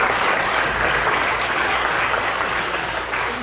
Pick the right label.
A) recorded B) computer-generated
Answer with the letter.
B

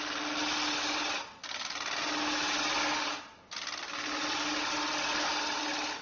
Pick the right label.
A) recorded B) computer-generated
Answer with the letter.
A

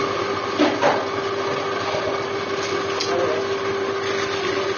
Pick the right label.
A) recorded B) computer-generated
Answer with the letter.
A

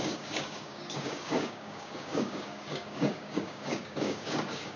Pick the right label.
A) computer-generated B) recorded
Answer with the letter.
A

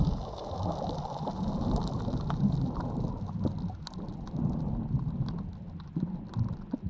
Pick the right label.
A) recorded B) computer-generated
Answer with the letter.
A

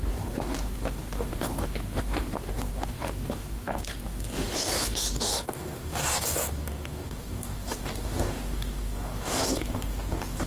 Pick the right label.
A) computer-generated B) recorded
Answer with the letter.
A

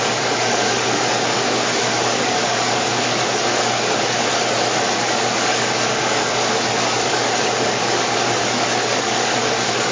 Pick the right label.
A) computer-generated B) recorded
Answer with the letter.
A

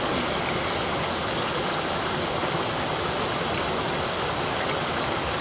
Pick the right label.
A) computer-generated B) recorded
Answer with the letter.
B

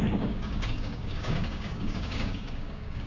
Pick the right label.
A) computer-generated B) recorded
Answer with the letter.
A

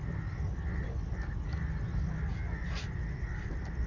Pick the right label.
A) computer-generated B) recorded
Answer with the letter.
B